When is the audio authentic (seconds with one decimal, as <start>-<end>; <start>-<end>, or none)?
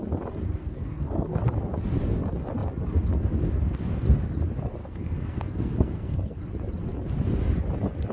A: 0.0-0.6; 1.4-4.8; 6.4-8.1